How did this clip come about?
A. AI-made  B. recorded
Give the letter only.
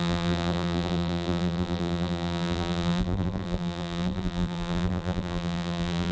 A